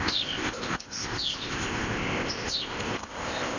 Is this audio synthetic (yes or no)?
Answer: yes